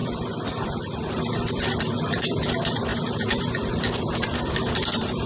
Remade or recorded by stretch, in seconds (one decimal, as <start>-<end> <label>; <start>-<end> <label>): 0.0-2.9 remade; 2.9-3.7 recorded; 3.7-5.3 remade